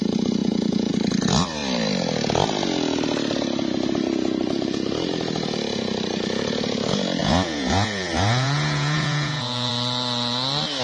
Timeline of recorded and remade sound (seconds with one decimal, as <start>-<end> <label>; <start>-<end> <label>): 0.0-0.4 recorded; 0.4-0.9 remade; 0.9-7.2 recorded; 7.2-9.7 remade; 9.7-10.8 recorded